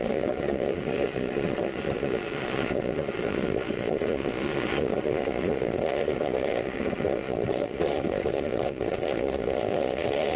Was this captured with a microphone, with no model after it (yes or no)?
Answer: no